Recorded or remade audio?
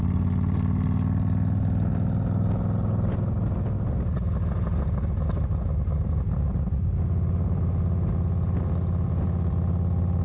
recorded